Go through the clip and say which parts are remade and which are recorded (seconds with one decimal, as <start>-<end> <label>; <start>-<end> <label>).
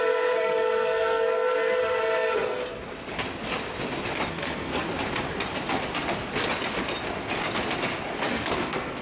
0.0-2.6 remade; 2.6-4.3 recorded; 4.3-4.7 remade; 4.7-8.3 recorded; 8.3-9.0 remade